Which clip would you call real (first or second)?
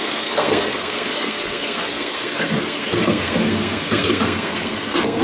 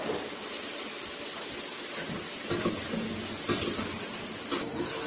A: second